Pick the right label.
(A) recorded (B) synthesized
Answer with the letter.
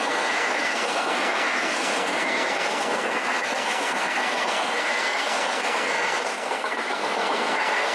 B